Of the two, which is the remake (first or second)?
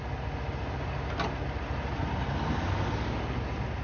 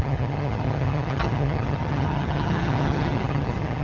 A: second